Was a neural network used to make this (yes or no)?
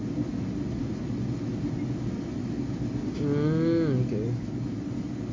no